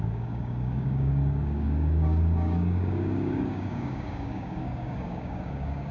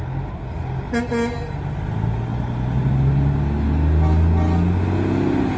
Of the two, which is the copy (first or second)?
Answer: first